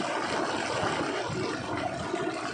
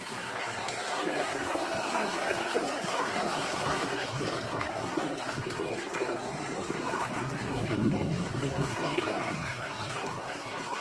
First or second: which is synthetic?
second